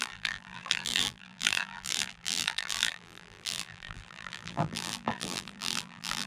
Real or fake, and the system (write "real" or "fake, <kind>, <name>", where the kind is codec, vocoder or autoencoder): fake, vocoder, BigVGAN v2